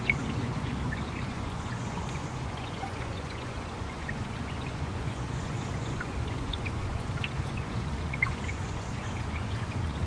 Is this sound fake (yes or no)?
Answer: yes